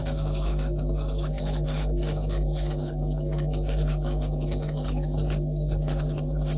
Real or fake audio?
fake